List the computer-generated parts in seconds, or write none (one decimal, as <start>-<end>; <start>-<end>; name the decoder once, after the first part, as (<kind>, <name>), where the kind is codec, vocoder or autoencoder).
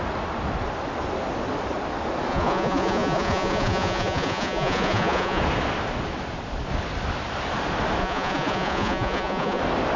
2.3-5.4 (vocoder, Vocos); 8.0-9.6